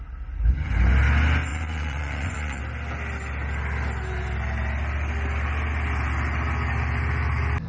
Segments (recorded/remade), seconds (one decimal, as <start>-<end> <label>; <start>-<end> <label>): 0.0-1.5 recorded; 1.5-2.6 remade; 2.6-7.7 recorded